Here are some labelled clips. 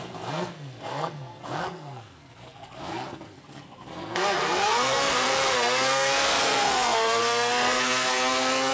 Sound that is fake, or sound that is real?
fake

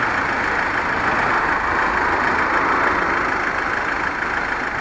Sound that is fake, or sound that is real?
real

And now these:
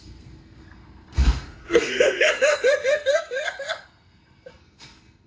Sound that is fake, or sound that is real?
fake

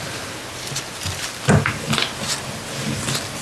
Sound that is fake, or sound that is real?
real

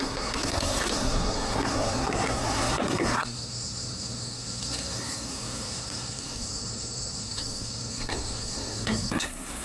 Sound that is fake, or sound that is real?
fake